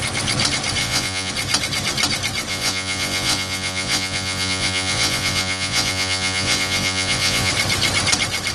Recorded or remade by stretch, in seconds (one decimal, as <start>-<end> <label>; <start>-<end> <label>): 0.0-0.8 recorded; 0.8-1.3 remade; 1.3-2.5 recorded; 2.5-7.5 remade; 7.5-8.5 recorded